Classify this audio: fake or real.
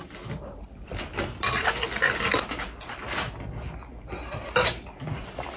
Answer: real